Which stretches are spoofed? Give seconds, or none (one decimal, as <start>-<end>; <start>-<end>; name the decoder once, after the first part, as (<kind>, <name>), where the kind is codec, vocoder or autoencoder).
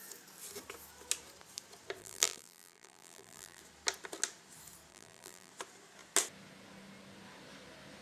2.0-3.6 (vocoder, BigVGAN v2); 4.9-5.5